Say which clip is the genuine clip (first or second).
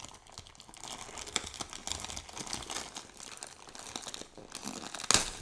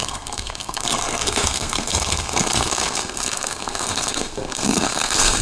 first